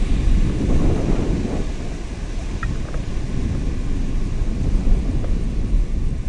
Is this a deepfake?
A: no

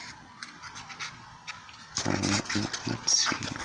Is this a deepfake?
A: no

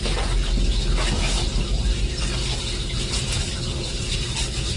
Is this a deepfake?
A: no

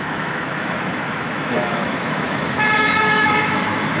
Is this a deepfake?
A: yes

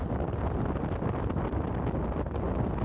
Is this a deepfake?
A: no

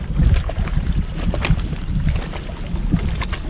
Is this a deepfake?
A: no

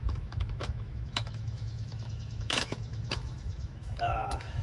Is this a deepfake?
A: yes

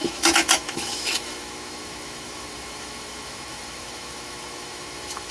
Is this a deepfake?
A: yes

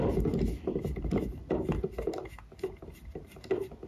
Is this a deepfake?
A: no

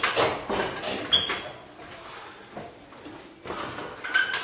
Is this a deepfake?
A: no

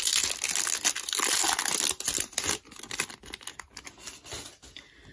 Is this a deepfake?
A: no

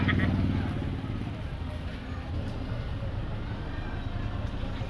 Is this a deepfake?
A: no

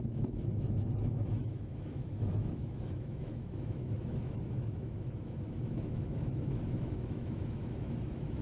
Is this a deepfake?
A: yes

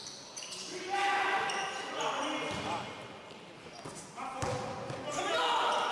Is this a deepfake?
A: no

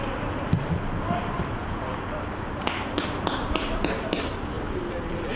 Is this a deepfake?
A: no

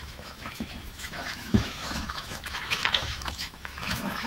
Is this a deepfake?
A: yes